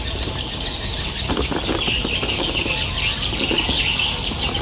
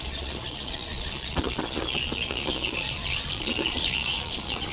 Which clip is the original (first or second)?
first